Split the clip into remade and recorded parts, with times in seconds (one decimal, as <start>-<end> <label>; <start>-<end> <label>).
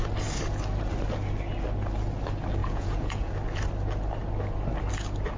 0.0-2.6 recorded; 2.6-3.3 remade; 3.3-5.4 recorded